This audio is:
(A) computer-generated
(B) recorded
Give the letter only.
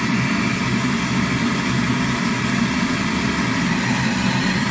B